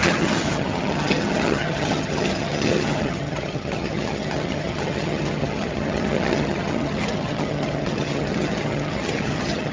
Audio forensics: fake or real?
fake